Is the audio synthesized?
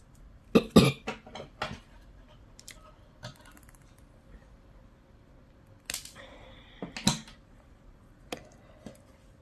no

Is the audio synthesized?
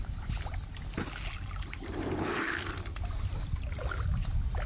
no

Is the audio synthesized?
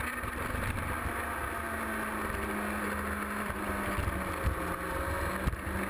no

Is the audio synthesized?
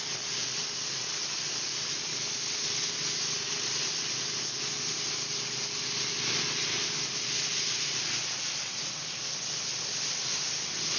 no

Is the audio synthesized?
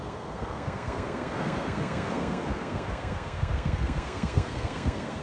yes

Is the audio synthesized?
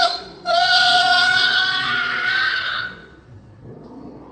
yes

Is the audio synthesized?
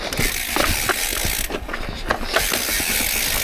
no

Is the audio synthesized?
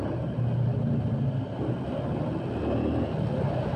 no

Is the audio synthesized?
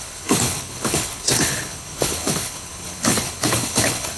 yes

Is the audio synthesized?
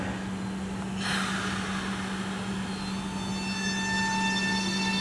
no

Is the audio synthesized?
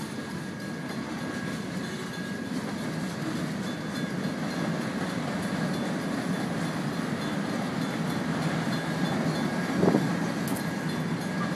no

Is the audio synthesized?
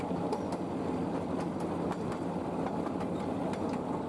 no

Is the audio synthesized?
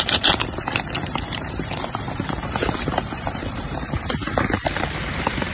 yes